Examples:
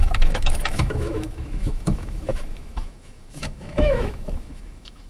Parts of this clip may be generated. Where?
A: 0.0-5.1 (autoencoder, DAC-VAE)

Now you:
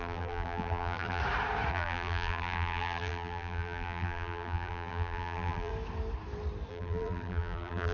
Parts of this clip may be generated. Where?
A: 0.0-1.2 (vocoder, BigVGAN v2); 1.7-5.7; 6.7-7.9

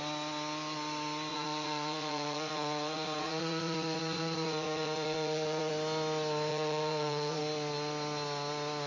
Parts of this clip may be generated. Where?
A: 1.3-5.7 (vocoder, Vocos); 6.5-7.4

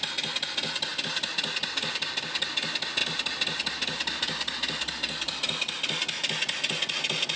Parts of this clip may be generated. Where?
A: none

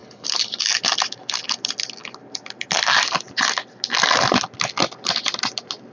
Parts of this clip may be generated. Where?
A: 0.0-0.6 (codec, HILCodec)

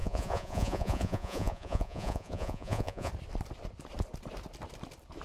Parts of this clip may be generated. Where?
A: 0.0-3.1 (vocoder, Vocos)

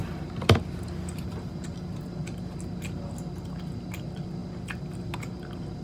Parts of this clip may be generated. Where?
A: none

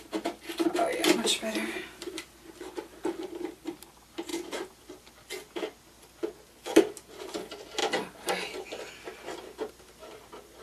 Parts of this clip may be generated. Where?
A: none